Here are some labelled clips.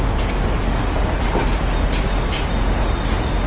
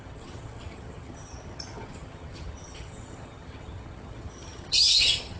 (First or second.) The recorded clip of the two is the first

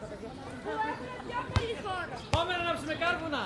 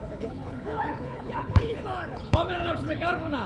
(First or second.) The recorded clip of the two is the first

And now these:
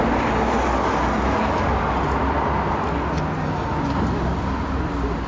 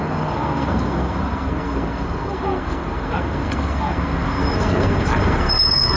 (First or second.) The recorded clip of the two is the first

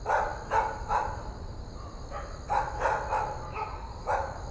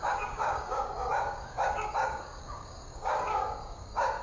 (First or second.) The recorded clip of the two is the first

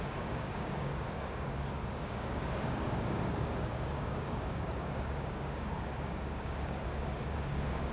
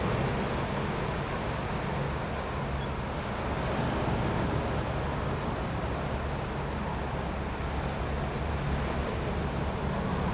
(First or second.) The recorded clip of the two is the second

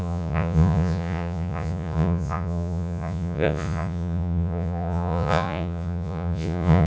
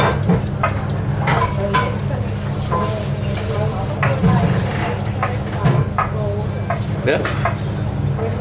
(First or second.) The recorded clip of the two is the second